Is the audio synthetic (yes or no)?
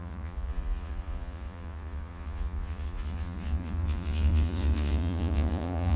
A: yes